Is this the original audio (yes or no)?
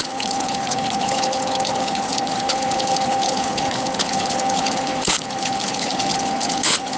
no